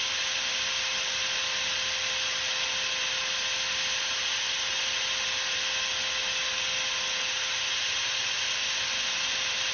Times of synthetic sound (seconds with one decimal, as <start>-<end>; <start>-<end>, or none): none